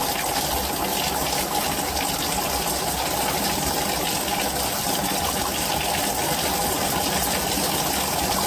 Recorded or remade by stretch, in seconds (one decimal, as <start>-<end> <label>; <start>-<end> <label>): 0.0-8.5 recorded